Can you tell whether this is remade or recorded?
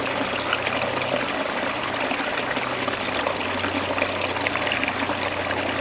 recorded